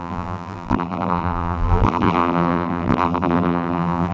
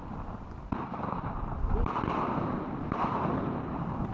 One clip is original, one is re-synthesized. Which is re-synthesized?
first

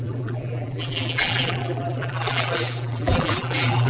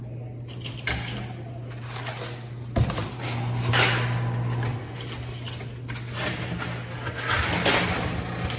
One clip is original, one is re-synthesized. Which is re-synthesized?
first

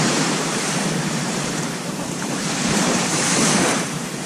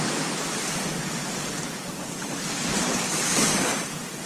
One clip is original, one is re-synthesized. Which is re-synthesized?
first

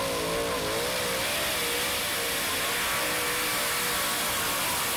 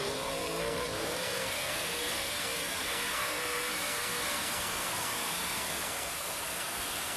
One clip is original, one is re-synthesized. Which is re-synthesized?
second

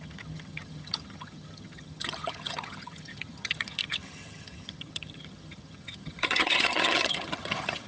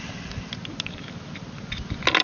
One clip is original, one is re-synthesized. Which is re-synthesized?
first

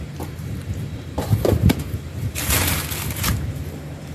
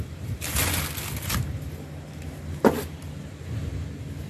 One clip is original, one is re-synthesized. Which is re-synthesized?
first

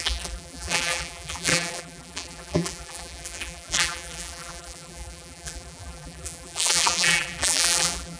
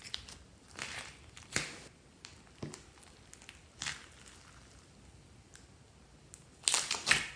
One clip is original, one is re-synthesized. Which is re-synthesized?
first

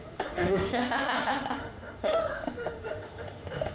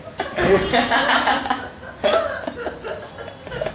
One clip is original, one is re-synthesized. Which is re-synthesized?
first